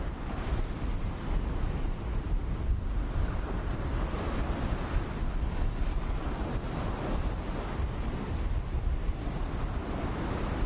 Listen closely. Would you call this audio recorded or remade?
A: recorded